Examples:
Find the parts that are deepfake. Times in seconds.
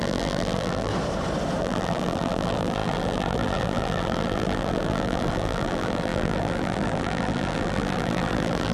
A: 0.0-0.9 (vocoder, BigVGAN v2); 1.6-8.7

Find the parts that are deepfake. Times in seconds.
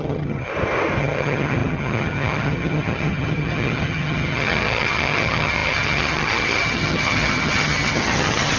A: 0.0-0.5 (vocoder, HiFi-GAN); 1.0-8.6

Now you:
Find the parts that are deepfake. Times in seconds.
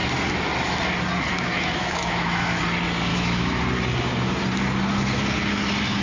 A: 1.3-2.6 (autoencoder, DAC-VAE); 3.1-3.6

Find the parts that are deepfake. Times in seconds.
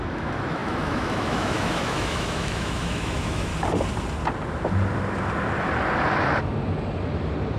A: 0.0-3.5 (autoencoder, DAC-VAE)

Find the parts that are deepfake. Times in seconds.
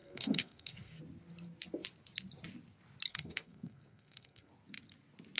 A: 0.0-1.0 (codec, SNAC); 3.1-4.5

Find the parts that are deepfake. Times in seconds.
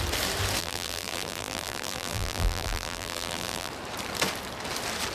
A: 0.6-3.7 (vocoder, BigVGAN v2)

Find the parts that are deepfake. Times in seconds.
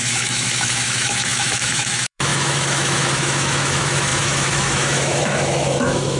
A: 0.0-6.2 (autoencoder, DAC-VAE)